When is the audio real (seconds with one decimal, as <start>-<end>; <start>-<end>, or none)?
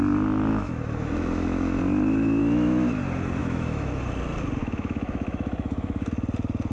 0.0-0.5; 1.8-2.4; 2.9-3.4; 4.0-4.6; 6.1-6.7